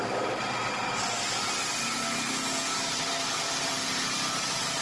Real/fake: real